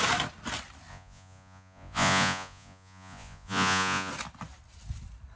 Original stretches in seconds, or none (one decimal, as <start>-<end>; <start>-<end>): 0.0-0.9; 4.1-5.4